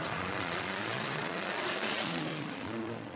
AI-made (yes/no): yes